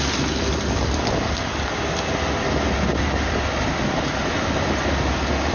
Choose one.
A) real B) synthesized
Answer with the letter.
A